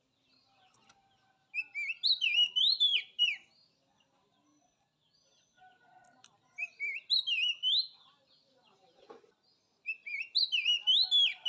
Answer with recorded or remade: recorded